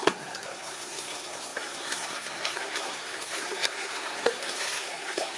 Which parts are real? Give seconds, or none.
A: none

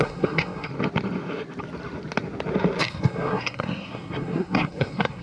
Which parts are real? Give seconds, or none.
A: 0.7-2.8

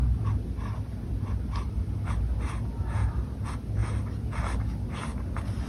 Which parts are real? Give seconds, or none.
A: 0.0-5.7